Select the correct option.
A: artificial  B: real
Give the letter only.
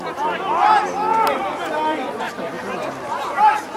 B